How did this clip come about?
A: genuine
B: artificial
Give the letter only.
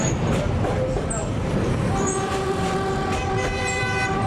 B